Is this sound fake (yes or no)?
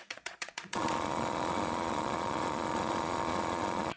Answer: yes